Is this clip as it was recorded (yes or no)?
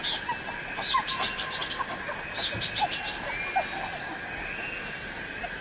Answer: yes